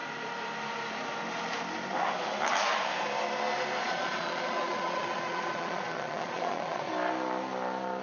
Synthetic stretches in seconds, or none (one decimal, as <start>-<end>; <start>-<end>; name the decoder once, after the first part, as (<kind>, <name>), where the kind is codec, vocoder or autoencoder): 3.8-6.9 (vocoder, Vocos)